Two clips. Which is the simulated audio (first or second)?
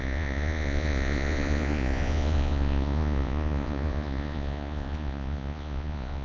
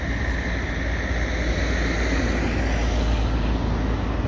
first